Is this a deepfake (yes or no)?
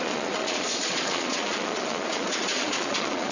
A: yes